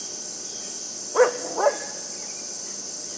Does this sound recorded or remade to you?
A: recorded